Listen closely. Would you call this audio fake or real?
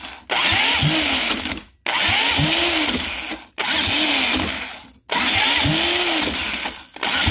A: real